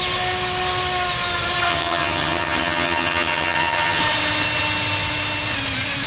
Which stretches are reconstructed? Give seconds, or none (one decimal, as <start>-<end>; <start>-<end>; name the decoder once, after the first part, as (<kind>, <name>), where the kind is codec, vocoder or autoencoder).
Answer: 1.7-4.0 (vocoder, HiFi-GAN)